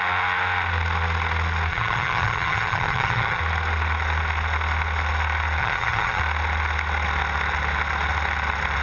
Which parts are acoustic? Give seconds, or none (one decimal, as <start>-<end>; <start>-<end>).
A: 0.0-1.7; 3.4-5.6; 6.2-8.8